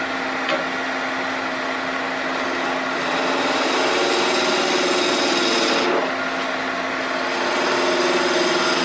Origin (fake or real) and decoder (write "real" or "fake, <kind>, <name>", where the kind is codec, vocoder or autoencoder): real